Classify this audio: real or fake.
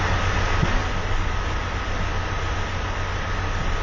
real